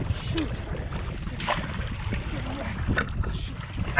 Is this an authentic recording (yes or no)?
yes